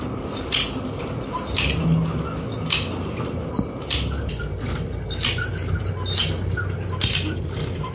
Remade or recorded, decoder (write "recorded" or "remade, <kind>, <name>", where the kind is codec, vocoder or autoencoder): recorded